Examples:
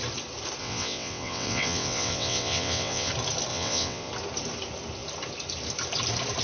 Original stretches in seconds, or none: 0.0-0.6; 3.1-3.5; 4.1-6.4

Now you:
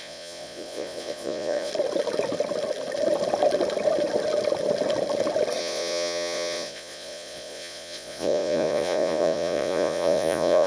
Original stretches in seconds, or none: 1.7-5.6